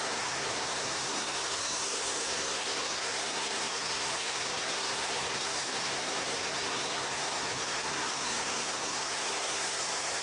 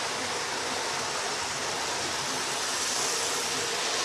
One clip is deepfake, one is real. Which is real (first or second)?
second